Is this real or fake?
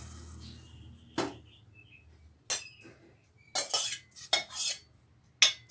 real